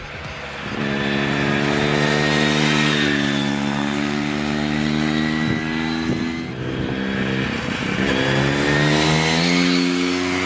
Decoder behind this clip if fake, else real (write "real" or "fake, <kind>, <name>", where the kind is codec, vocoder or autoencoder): real